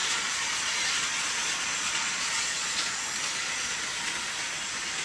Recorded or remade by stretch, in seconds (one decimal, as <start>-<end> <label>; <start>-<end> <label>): 0.0-3.0 remade; 3.0-3.4 recorded; 3.4-3.9 remade; 3.9-5.0 recorded